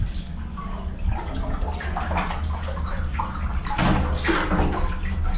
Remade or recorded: recorded